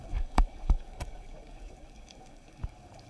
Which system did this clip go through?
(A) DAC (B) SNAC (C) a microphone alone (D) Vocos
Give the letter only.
A